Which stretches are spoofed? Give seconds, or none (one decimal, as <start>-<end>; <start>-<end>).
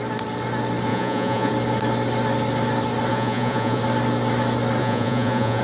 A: 0.9-1.5; 3.1-3.8; 4.8-5.6